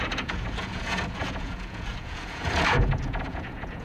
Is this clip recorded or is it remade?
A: remade